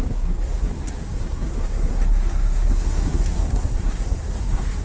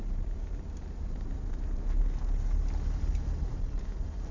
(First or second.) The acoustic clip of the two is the second